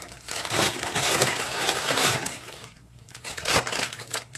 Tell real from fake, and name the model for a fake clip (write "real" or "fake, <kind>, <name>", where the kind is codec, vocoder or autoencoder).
fake, codec, SNAC